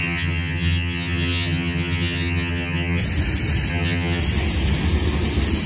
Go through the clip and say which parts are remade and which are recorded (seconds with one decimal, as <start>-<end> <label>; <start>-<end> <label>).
0.0-3.0 remade; 3.0-3.7 recorded; 3.7-4.2 remade; 4.2-5.7 recorded